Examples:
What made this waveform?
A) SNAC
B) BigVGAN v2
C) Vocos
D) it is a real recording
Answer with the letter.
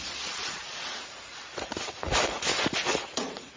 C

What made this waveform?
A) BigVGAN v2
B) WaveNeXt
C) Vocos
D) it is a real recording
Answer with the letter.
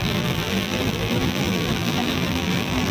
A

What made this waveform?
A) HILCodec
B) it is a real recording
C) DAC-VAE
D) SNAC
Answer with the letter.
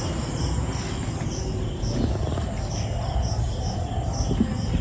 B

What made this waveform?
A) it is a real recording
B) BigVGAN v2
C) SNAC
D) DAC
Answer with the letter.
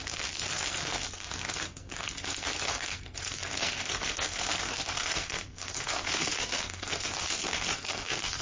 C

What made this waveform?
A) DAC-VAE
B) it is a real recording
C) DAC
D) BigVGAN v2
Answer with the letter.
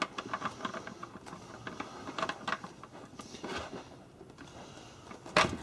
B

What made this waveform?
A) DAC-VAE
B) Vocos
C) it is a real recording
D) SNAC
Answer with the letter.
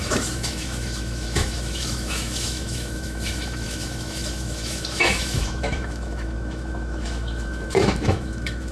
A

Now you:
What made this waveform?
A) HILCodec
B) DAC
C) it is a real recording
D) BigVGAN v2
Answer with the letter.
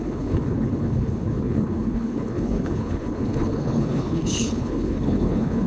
A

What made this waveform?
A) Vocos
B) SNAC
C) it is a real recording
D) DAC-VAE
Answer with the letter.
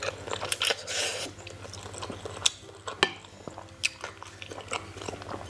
C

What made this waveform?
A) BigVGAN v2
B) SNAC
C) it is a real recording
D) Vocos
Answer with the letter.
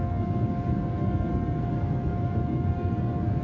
B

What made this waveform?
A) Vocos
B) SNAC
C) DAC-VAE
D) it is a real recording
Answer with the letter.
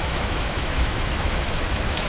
C